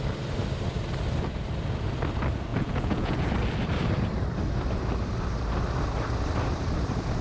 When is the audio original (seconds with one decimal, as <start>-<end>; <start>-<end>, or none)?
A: 0.0-2.5; 3.3-7.2